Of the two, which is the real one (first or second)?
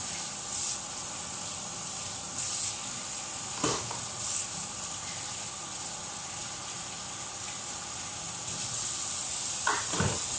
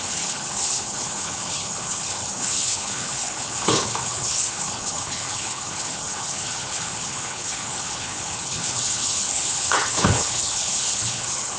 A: first